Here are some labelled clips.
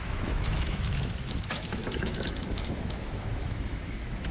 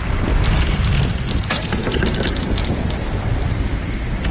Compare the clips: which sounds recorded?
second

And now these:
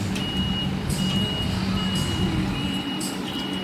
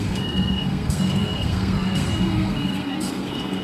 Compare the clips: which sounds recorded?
first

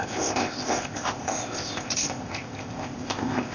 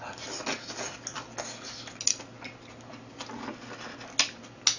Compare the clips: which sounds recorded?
second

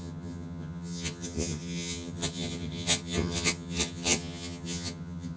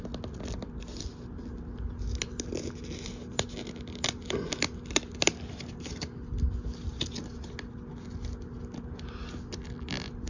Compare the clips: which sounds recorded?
second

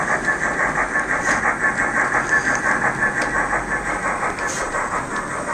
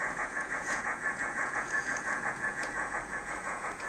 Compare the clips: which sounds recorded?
first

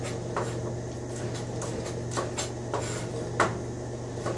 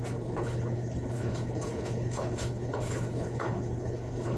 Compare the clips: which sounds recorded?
first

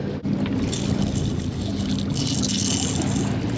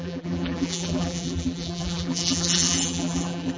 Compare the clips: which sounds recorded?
first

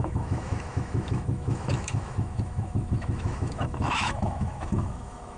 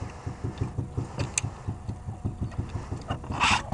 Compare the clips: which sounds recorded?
second